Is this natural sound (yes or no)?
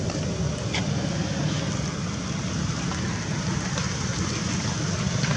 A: yes